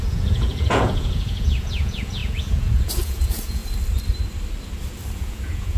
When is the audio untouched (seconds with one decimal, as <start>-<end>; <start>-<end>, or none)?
3.6-5.1